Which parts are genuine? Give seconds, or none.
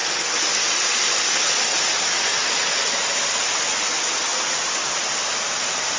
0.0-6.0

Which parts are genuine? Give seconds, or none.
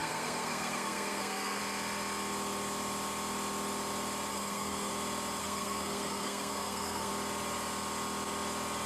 1.6-4.3; 4.9-5.4; 7.1-8.9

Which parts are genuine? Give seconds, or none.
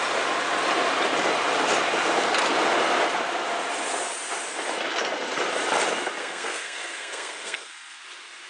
0.0-6.2; 8.0-8.5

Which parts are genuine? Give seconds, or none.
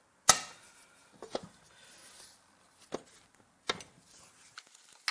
0.0-5.1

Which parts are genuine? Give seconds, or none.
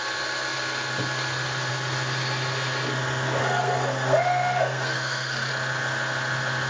0.0-3.4; 5.5-6.7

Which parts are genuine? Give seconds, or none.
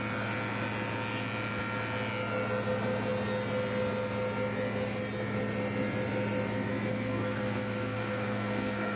0.0-6.9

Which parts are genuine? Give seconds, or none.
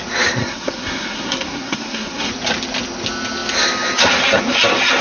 0.0-0.4; 2.3-5.0